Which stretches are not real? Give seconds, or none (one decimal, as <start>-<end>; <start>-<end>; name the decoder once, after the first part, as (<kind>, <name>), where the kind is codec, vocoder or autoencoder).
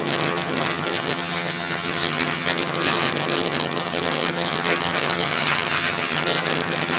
0.0-7.0 (vocoder, HiFi-GAN)